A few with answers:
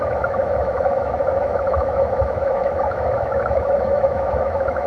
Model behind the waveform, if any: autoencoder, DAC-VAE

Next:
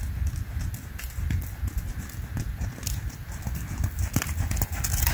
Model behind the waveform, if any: none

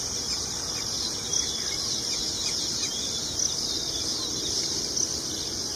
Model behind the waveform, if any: none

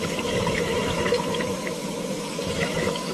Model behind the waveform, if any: autoencoder, DAC-VAE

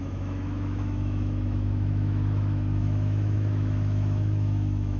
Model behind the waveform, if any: autoencoder, DAC-VAE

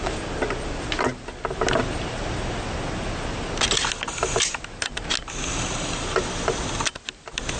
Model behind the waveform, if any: none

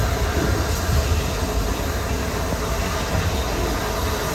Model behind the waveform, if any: none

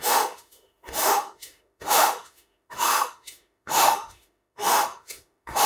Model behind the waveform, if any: autoencoder, DAC-VAE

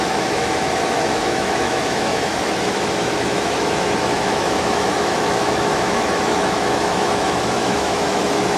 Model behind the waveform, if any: autoencoder, DAC-VAE